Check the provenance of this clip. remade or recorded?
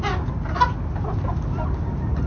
recorded